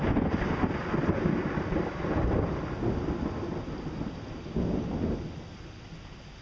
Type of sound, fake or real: real